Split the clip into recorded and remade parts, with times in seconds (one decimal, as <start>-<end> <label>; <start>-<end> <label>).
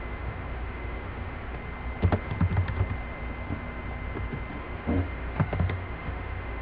0.0-1.6 remade; 1.6-4.6 recorded; 4.6-6.6 remade